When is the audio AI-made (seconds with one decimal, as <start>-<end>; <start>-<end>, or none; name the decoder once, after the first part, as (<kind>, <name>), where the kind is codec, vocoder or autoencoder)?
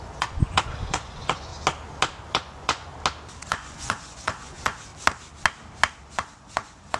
0.0-1.5 (vocoder, Vocos); 2.3-2.9; 3.5-4.9; 6.0-7.0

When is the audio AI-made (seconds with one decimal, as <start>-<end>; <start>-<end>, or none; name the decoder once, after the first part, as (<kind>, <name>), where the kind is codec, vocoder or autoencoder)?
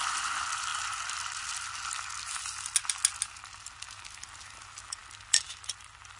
none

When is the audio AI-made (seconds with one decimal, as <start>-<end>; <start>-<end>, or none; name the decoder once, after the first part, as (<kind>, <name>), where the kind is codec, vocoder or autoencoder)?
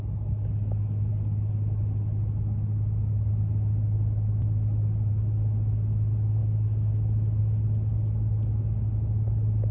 none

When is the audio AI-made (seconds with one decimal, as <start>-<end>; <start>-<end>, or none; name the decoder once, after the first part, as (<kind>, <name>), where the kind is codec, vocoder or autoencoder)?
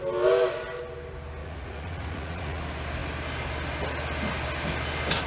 1.4-2.6 (vocoder, Vocos)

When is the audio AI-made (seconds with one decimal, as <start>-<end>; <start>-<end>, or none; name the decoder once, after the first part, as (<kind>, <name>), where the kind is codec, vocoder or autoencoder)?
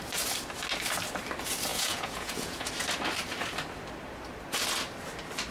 1.7-2.7 (vocoder, Vocos)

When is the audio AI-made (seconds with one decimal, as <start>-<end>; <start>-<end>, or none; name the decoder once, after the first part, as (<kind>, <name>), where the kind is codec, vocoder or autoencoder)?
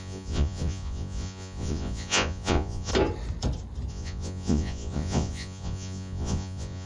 0.0-2.9 (vocoder, Vocos); 3.9-6.9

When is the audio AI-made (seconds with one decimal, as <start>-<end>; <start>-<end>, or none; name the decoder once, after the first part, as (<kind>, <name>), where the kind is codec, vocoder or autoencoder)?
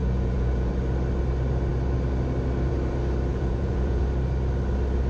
0.0-0.7 (vocoder, Vocos); 3.3-4.0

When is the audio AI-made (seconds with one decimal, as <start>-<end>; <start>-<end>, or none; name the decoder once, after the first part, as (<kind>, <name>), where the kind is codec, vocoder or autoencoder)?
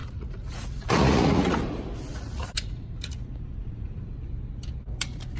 0.0-1.6 (vocoder, Vocos); 2.1-3.2; 3.6-4.1